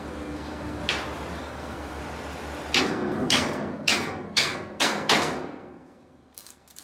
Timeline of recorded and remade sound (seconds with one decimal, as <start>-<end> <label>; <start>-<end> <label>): 0.0-0.8 remade; 0.8-1.4 recorded; 1.4-2.0 remade; 2.0-2.8 recorded; 2.8-6.8 remade